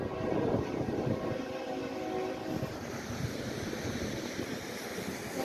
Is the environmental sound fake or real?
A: real